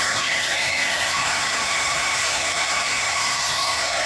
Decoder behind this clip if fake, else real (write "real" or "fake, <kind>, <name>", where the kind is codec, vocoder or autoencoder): fake, codec, SNAC